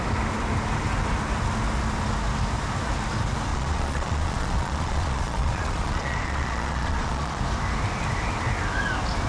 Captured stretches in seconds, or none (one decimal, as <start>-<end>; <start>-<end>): 0.0-3.5; 7.4-9.3